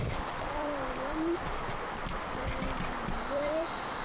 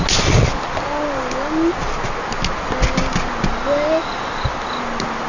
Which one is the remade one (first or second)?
first